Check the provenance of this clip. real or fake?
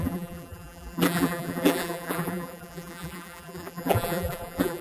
fake